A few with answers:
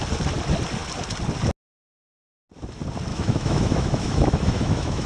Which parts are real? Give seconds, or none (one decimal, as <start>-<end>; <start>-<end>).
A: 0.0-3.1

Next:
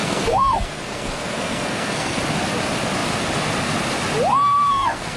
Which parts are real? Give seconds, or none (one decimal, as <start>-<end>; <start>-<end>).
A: 2.2-4.3

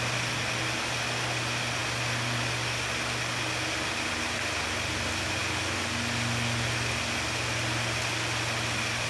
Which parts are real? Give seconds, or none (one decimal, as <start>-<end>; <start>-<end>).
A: 0.0-9.1